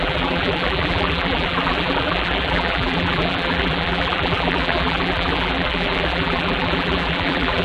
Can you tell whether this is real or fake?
fake